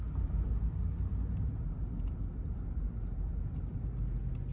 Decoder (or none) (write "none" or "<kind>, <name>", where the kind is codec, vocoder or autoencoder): none